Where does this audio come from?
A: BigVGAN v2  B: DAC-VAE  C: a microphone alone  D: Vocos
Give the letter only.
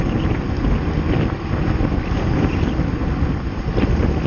C